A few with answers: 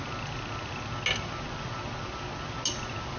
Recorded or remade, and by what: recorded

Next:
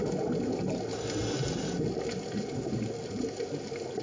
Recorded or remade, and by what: recorded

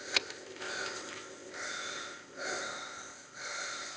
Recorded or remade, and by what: remade, codec, ZipCodec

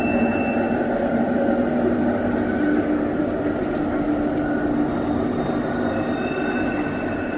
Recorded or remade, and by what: recorded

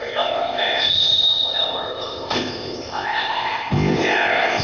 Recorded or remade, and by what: remade, codec, ZipCodec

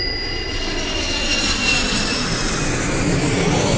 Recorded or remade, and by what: recorded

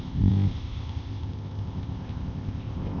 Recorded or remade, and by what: remade, codec, ZipCodec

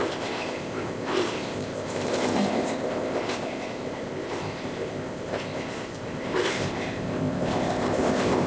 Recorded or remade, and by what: remade, codec, ZipCodec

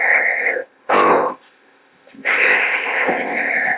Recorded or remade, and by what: remade, codec, ZipCodec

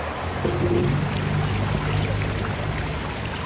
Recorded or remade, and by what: recorded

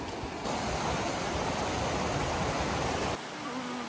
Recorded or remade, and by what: recorded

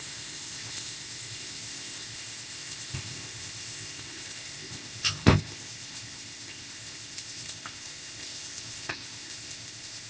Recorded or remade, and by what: remade, codec, ZipCodec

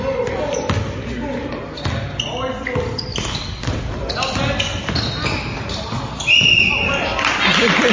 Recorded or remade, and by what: recorded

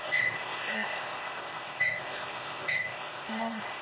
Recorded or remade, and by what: remade, codec, ZipCodec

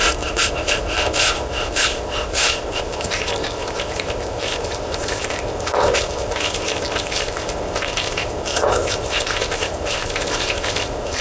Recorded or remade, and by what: remade, codec, ZipCodec